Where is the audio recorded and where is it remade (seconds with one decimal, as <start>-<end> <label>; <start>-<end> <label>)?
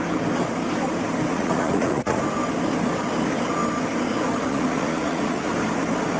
0.0-1.3 recorded; 1.3-2.2 remade; 2.2-4.5 recorded; 4.5-5.5 remade; 5.5-6.2 recorded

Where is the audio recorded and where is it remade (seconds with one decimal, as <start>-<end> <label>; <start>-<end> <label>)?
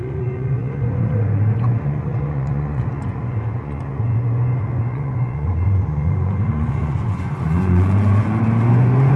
0.0-9.2 remade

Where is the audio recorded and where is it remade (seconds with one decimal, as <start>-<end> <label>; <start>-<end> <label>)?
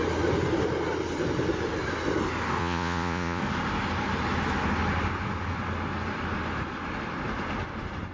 0.0-2.6 recorded; 2.6-3.4 remade; 3.4-8.1 recorded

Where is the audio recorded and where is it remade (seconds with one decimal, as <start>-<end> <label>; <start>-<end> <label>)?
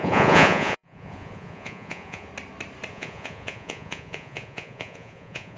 0.0-2.3 remade; 2.3-2.9 recorded; 2.9-5.6 remade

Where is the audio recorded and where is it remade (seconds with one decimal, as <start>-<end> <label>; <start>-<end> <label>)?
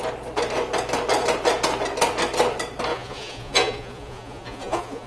0.0-2.9 recorded; 2.9-5.1 remade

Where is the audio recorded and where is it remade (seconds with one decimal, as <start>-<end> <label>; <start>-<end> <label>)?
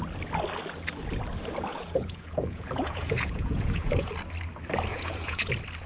0.0-1.7 recorded; 1.7-4.1 remade; 4.1-4.9 recorded; 4.9-5.5 remade; 5.5-5.9 recorded